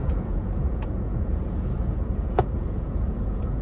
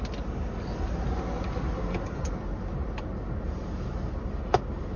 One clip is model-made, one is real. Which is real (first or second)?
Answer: second